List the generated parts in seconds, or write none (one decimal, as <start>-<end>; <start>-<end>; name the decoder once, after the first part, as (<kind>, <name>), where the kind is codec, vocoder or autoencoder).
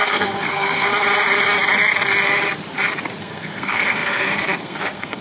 0.0-0.9 (codec, SNAC); 3.2-5.2